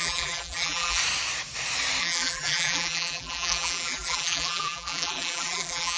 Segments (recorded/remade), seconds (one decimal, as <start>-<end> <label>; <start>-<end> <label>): 0.0-1.0 remade; 1.0-2.0 recorded; 2.0-6.0 remade